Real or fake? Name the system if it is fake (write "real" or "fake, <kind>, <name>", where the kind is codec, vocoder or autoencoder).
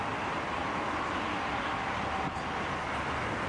real